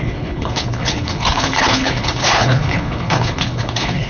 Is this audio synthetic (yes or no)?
yes